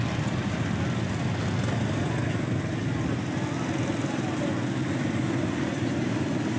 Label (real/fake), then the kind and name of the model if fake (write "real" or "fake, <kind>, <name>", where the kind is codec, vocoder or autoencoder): real